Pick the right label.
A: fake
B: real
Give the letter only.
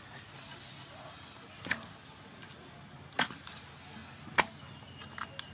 B